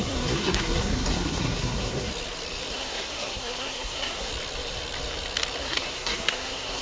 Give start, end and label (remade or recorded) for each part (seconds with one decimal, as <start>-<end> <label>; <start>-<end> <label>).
0.0-2.1 remade; 2.1-2.7 recorded; 2.7-4.3 remade; 4.3-5.6 recorded; 5.6-6.8 remade